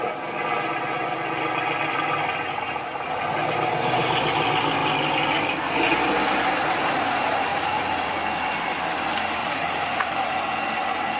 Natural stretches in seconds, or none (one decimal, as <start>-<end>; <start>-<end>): 0.0-7.5; 8.2-9.4; 10.3-11.2